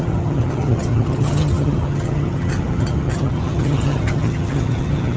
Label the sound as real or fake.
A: fake